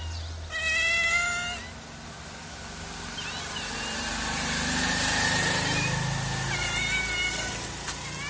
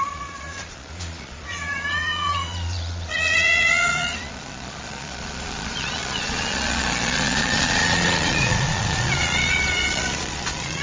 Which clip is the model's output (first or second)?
second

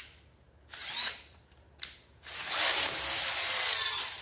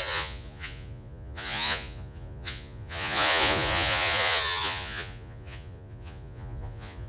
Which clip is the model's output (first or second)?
second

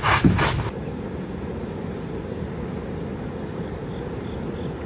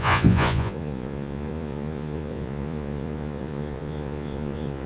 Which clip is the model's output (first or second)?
second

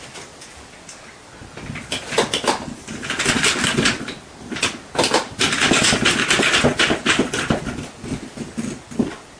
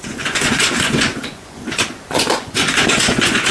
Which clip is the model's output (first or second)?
second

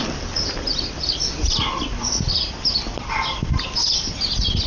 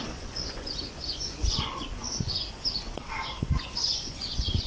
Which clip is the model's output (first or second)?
second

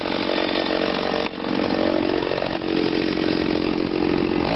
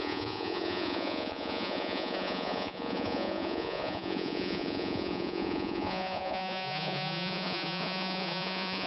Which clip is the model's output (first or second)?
second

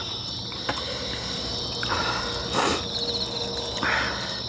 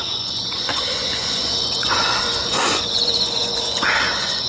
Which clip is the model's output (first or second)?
second